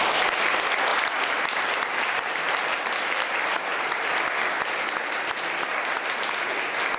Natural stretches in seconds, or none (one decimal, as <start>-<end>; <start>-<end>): 0.0-0.9; 2.8-7.0